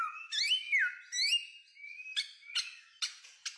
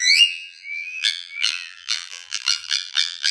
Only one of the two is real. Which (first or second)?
first